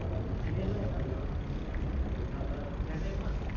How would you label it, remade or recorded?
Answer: recorded